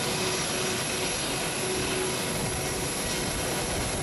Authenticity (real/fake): real